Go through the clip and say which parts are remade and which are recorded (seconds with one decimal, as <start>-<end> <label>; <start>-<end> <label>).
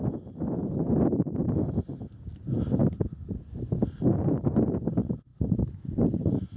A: 0.0-0.6 recorded; 0.6-1.4 remade; 1.4-5.3 recorded; 5.3-6.6 remade